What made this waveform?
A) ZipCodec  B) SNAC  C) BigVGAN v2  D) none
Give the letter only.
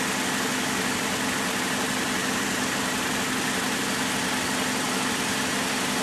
D